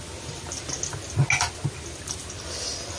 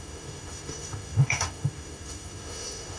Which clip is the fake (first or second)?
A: second